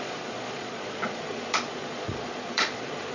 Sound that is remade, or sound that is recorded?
remade